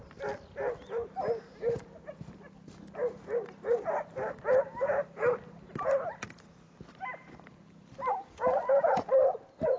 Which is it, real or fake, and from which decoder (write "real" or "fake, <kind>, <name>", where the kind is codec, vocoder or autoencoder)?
real